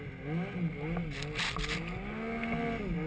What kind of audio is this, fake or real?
real